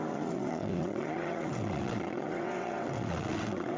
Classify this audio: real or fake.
fake